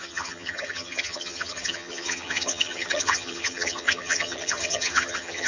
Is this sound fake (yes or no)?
yes